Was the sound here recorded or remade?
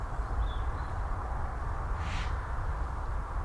remade